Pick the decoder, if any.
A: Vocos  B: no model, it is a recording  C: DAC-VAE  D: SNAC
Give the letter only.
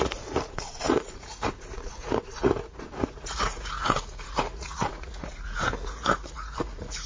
A